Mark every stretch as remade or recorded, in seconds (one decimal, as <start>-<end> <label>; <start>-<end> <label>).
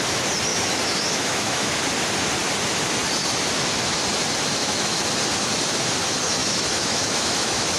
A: 0.0-0.5 recorded; 0.5-1.8 remade; 1.8-4.6 recorded; 4.6-5.1 remade; 5.1-6.4 recorded; 6.4-7.8 remade